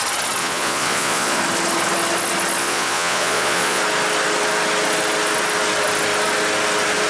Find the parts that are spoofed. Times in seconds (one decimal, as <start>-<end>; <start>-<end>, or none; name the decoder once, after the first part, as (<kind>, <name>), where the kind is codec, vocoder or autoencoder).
0.4-1.4 (vocoder, Vocos); 2.6-3.8